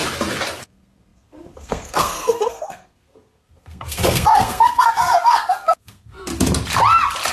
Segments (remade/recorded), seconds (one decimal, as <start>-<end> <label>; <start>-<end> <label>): 0.0-0.6 recorded; 0.6-6.3 remade; 6.3-7.3 recorded